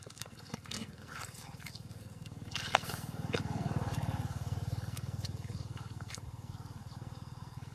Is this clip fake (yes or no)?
yes